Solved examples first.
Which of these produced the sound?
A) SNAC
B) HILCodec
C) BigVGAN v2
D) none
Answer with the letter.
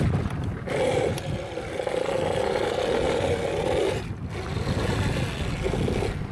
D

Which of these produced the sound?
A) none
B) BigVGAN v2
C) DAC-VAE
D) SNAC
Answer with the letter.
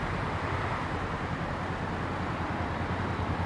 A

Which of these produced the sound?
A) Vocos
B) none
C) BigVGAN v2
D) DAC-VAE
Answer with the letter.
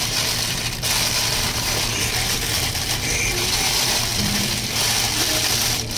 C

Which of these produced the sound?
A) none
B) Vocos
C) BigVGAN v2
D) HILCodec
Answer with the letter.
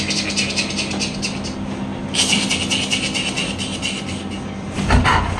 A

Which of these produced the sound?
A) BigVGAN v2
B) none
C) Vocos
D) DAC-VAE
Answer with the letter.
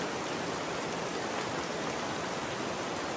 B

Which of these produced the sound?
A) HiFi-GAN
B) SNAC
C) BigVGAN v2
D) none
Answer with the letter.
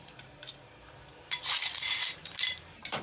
C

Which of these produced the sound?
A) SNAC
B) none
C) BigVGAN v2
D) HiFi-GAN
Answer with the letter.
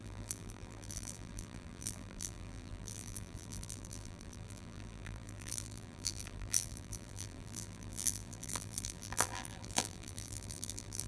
C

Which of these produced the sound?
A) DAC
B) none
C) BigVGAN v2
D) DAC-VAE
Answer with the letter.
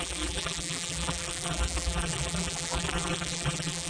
C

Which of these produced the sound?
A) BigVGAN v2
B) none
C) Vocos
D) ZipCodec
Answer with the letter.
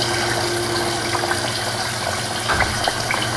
B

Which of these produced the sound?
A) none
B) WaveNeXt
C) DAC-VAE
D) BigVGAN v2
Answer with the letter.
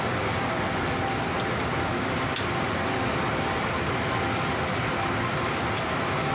A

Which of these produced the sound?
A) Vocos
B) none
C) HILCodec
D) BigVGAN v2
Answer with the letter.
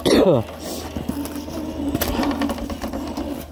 B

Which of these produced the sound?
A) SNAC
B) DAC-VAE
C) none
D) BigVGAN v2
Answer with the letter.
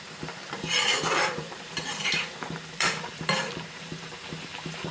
D